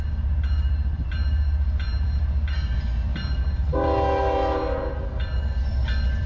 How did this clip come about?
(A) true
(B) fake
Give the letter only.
A